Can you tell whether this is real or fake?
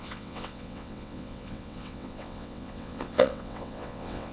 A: fake